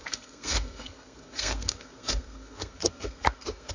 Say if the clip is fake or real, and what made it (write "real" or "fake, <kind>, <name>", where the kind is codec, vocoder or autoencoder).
fake, codec, SNAC